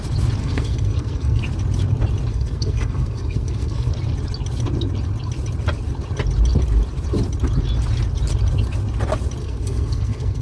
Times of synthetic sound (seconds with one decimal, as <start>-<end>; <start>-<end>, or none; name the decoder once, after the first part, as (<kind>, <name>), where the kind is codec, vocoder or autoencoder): 0.4-1.4 (codec, SNAC); 2.3-3.9; 9.4-10.4